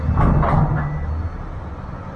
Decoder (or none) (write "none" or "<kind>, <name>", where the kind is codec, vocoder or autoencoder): none